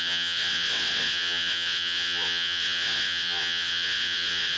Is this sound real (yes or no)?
no